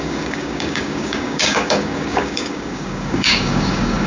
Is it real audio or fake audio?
fake